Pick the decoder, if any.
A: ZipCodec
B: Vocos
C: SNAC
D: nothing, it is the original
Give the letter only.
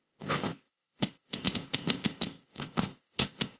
A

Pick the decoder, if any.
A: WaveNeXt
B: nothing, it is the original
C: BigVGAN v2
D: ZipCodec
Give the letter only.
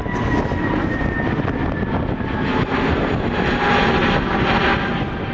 B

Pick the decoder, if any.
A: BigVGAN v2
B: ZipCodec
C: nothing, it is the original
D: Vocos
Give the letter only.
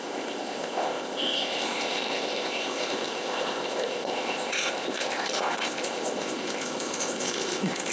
B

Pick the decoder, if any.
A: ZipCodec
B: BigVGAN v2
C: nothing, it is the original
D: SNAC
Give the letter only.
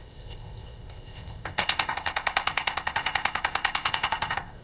A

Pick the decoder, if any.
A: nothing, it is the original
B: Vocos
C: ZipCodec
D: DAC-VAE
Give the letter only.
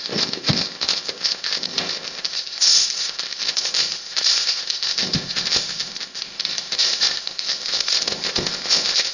C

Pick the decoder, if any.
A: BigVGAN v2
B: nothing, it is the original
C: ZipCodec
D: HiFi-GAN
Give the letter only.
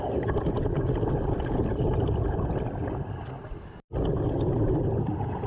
B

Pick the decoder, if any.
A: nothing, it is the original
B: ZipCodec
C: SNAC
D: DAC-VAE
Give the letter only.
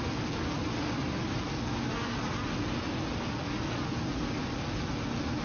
A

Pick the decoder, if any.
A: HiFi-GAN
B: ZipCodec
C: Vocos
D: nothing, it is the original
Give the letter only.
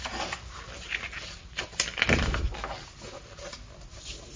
D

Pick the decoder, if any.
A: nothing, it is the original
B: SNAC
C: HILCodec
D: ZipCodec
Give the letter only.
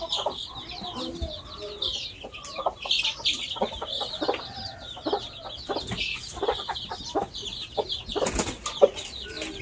A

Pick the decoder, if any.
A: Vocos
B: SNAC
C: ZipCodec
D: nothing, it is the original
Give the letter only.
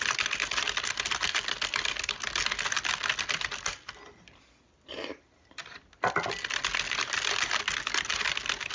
D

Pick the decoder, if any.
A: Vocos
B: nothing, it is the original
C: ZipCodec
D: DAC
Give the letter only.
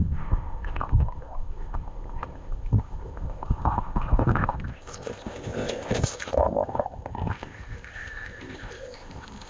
C